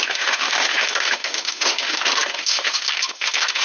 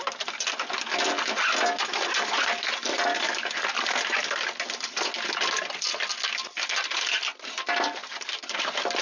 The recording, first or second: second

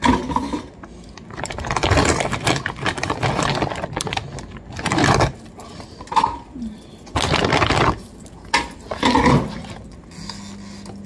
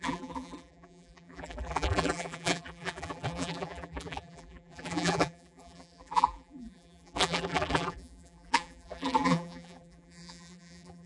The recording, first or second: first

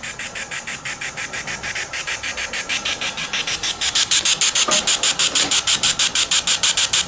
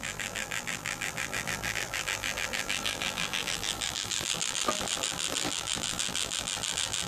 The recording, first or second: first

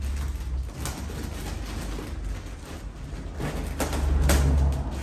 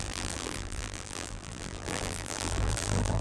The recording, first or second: first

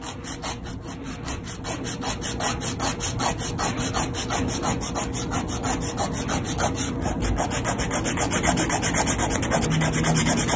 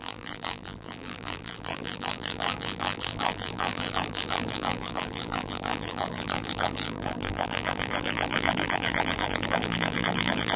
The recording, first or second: first